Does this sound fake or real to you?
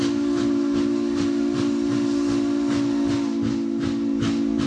real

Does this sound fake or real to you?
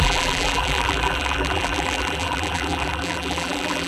fake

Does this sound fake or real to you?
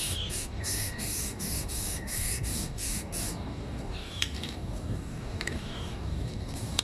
fake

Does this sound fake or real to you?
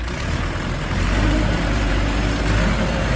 fake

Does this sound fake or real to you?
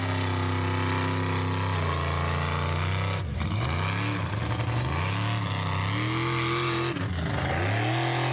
real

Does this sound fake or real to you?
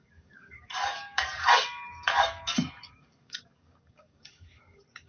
fake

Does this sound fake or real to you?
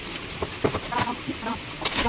real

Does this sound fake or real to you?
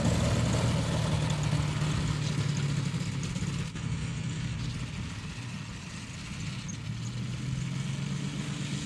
real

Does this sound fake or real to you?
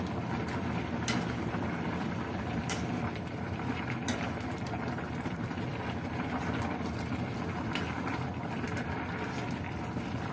fake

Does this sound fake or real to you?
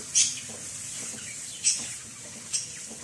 real